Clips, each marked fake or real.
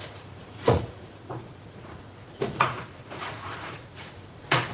fake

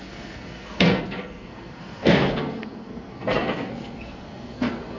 fake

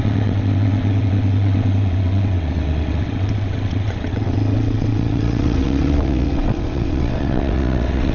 fake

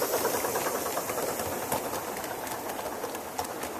real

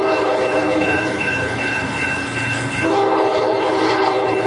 fake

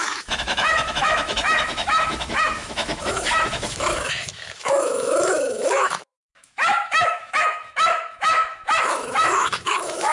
fake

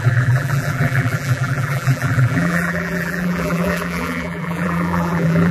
fake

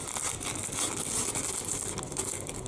real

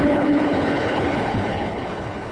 fake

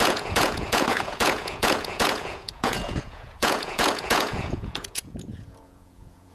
fake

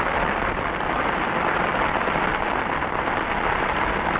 fake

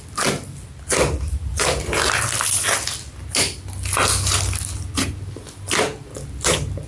real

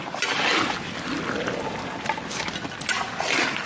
real